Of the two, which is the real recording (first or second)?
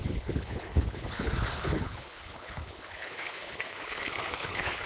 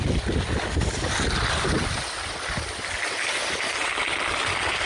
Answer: second